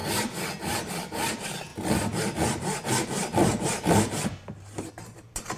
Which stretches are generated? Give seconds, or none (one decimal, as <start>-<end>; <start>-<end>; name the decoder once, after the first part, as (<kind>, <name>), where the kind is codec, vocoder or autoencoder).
none